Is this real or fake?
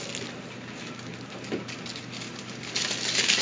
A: real